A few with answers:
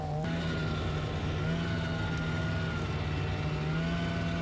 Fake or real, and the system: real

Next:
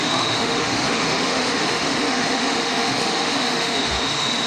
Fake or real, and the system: fake, autoencoder, DAC-VAE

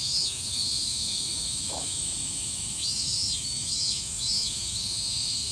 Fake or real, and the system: fake, autoencoder, DAC-VAE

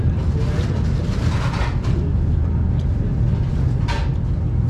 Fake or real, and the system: real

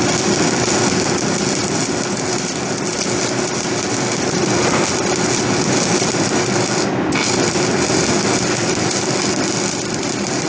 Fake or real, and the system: real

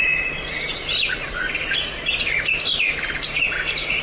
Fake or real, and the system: real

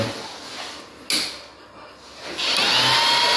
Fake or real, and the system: real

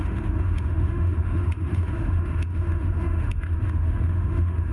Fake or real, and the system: fake, autoencoder, DAC-VAE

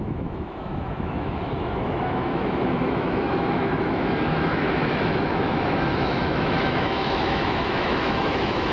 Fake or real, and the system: fake, autoencoder, DAC-VAE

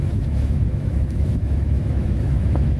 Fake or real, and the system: fake, autoencoder, DAC-VAE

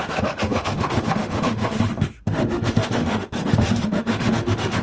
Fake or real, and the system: fake, autoencoder, DAC-VAE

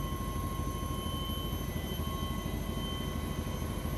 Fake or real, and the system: real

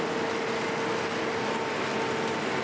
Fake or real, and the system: real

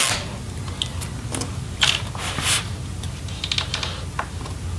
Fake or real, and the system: real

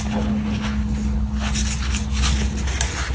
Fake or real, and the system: real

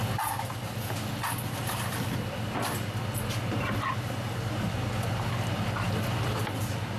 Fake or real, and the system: real